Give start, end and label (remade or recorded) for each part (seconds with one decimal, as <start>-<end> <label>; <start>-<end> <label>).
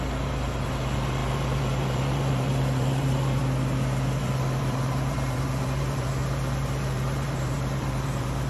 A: 0.0-3.4 remade; 3.4-4.2 recorded; 4.2-8.5 remade